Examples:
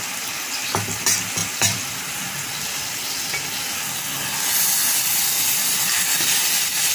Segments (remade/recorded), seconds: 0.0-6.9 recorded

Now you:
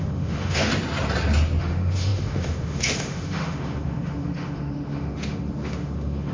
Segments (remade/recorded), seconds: 0.0-0.7 remade; 0.7-1.6 recorded; 1.6-6.3 remade

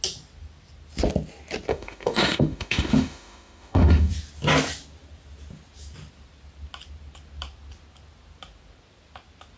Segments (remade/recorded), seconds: 0.0-1.7 recorded; 1.7-4.1 remade; 4.1-9.6 recorded

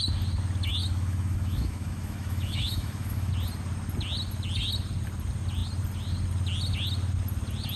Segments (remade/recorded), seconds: 0.0-0.8 recorded; 0.8-3.3 remade; 3.3-7.8 recorded

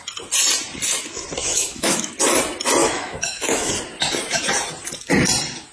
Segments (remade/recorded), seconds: 0.0-1.4 recorded; 1.4-2.1 remade; 2.1-2.8 recorded; 2.8-3.7 remade; 3.7-5.7 recorded

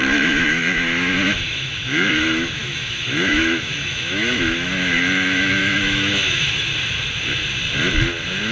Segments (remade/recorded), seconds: 0.0-6.7 remade; 6.7-8.5 recorded